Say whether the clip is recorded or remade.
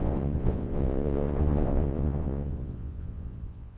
remade